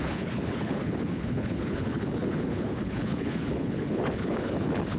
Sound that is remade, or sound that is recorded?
remade